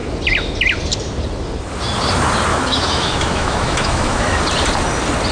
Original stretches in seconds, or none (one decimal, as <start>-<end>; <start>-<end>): 0.0-2.5; 4.4-5.3